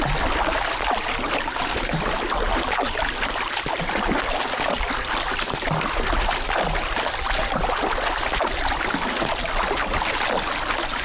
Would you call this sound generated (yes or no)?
no